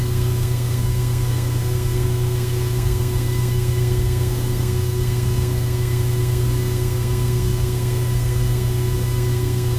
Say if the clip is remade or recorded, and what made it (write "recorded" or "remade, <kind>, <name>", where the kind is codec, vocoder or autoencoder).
remade, codec, SNAC